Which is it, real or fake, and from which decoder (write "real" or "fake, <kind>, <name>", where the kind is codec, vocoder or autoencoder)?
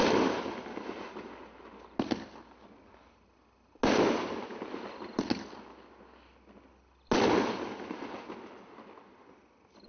real